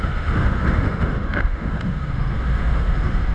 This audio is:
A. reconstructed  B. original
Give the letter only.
A